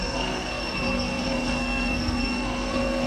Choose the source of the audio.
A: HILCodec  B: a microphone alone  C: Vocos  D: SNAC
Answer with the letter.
D